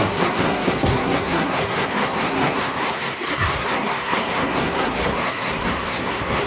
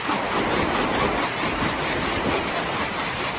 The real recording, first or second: second